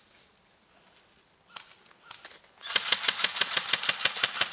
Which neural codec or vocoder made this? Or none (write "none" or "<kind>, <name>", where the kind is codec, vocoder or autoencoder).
none